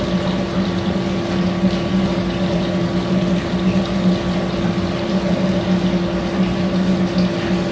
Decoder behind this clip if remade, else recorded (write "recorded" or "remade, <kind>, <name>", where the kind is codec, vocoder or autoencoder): recorded